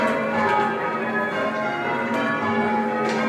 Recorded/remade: recorded